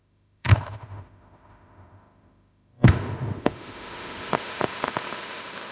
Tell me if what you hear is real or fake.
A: fake